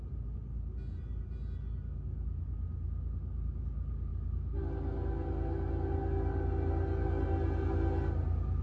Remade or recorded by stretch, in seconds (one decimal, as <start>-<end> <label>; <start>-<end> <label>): 0.0-8.6 recorded